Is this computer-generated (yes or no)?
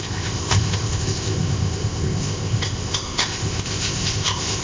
yes